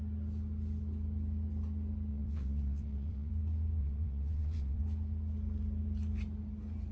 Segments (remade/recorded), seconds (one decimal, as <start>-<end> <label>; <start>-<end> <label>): 0.0-2.1 recorded; 2.1-3.3 remade; 3.3-3.8 recorded; 3.8-4.8 remade; 4.8-6.9 recorded